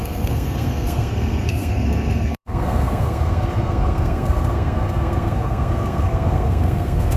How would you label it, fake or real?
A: fake